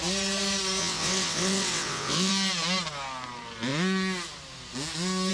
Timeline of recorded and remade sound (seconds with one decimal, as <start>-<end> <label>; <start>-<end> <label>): 0.0-0.8 recorded; 0.8-2.3 remade; 2.3-5.3 recorded